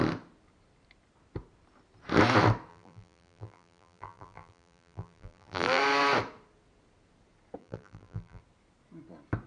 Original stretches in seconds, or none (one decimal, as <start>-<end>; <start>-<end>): 0.0-2.7; 5.8-7.6; 8.4-9.5

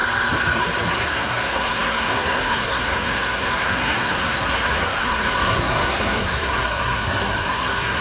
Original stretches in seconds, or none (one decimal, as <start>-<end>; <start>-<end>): 0.0-0.9

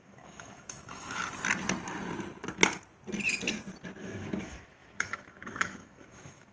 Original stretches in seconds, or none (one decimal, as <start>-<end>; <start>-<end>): 1.2-4.0

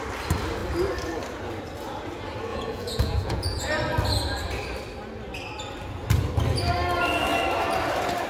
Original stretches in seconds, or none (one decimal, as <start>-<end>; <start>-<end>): 0.0-2.5; 3.6-8.3